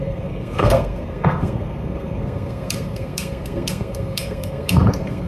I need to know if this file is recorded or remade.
remade